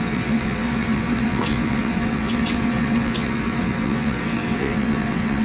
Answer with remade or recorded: remade